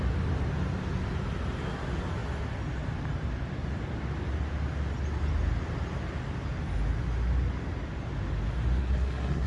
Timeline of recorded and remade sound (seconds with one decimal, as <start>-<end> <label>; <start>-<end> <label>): 0.0-8.8 recorded; 8.8-9.5 remade